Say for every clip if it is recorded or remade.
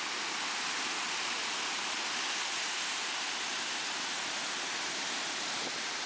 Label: remade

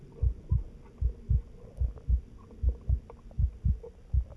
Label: recorded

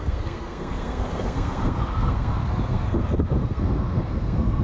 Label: remade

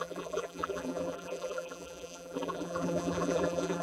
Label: remade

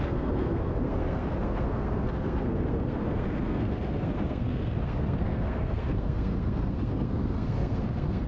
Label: remade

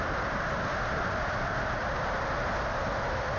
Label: recorded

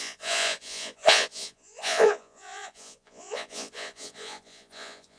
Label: remade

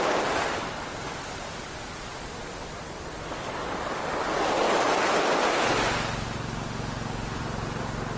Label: recorded